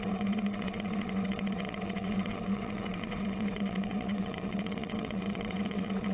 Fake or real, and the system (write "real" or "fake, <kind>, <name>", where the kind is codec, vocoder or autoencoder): fake, vocoder, WaveNeXt